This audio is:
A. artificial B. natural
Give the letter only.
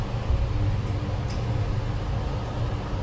B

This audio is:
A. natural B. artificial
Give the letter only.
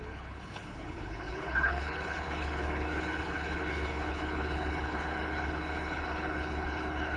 B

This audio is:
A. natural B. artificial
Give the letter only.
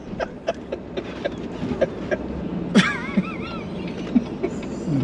A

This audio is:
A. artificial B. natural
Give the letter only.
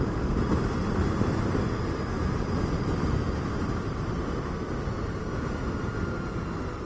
B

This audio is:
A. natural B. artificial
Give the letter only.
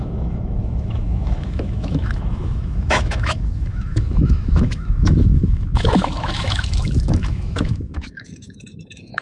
B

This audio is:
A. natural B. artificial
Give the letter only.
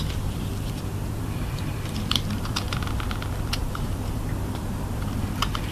B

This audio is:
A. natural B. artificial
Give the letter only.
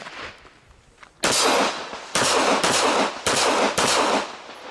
A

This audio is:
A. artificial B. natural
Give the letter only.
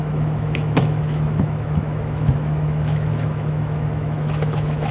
A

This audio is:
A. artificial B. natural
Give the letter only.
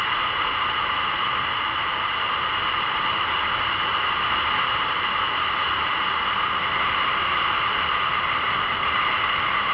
B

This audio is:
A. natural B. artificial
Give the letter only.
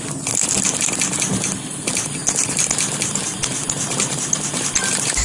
A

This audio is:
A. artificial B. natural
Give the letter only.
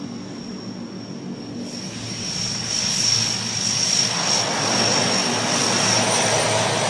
B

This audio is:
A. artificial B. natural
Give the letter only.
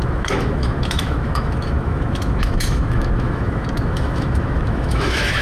A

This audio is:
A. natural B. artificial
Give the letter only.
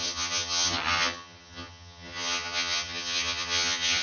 B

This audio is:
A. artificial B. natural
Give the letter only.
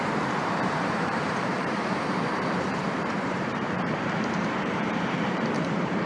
A